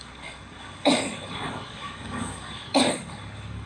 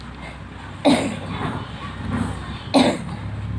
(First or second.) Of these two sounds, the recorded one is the second